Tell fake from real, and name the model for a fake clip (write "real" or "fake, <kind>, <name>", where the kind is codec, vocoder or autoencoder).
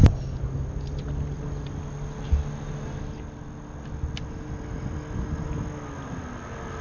real